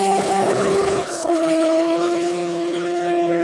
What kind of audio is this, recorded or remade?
remade